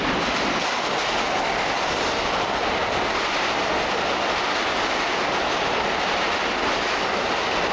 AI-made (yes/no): no